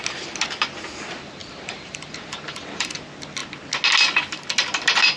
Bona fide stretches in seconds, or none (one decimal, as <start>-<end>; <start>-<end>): 0.0-1.4; 2.9-5.2